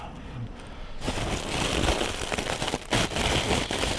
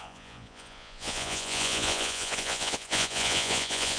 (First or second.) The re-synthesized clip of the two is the second